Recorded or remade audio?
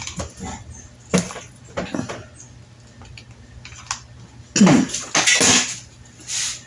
recorded